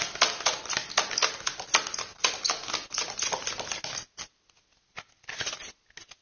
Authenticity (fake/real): real